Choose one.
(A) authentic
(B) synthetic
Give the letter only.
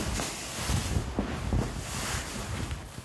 A